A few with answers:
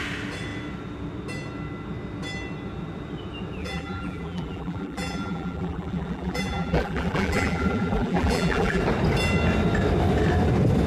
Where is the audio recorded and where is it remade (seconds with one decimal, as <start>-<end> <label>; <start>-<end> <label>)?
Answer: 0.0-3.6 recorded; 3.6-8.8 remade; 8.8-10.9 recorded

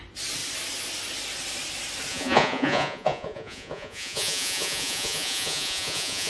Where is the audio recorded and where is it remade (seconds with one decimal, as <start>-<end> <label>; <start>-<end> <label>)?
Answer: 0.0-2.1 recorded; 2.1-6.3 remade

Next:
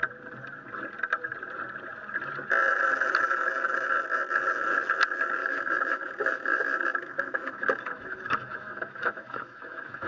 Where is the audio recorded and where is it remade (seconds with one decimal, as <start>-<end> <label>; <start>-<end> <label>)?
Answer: 0.0-5.4 recorded; 5.4-10.1 remade

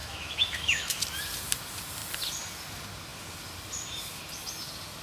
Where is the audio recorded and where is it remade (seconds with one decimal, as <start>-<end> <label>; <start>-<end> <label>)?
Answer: 0.0-1.0 remade; 1.0-5.0 recorded

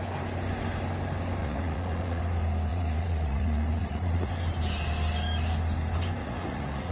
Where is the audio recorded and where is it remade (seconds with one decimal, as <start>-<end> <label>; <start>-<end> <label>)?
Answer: 0.0-1.4 recorded; 1.4-2.2 remade; 2.2-2.7 recorded; 2.7-4.3 remade; 4.3-6.2 recorded; 6.2-6.9 remade

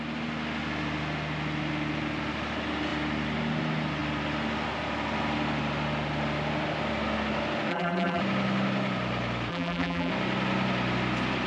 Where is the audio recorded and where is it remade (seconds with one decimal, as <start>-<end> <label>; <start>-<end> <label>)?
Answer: 0.0-7.7 recorded; 7.7-8.2 remade; 8.2-9.5 recorded; 9.5-10.1 remade; 10.1-11.5 recorded

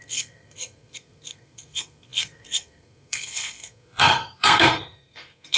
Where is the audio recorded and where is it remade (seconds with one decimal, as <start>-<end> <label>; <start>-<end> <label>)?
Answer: 0.0-5.6 remade